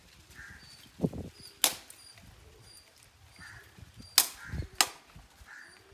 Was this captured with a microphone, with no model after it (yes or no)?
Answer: yes